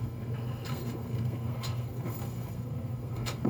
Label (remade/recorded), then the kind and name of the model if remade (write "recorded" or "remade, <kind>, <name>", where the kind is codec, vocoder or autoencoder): remade, codec, SNAC